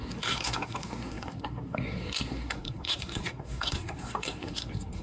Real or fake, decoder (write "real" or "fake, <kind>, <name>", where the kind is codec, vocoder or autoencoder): fake, codec, SNAC